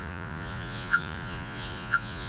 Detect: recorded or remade remade